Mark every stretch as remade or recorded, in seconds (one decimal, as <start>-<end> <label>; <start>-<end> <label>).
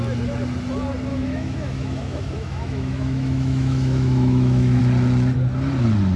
0.0-1.1 recorded; 1.1-4.8 remade; 4.8-6.2 recorded